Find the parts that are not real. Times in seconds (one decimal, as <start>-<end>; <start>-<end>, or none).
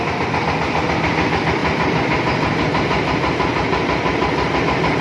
none